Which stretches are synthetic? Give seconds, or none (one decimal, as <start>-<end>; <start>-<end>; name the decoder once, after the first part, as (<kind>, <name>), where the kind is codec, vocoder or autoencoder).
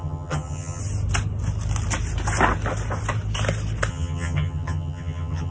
0.0-0.8 (vocoder, HiFi-GAN); 3.9-5.5